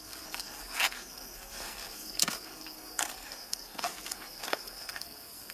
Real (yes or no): no